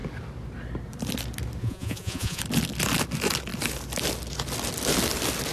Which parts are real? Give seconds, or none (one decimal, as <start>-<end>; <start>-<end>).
0.0-1.6; 2.4-5.5